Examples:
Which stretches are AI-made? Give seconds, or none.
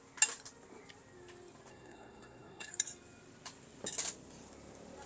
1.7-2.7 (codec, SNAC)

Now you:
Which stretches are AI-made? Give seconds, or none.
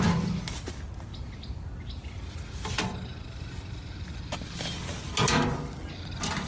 none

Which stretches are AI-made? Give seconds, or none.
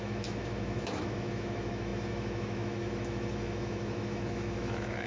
0.0-5.1 (autoencoder, DAC-VAE)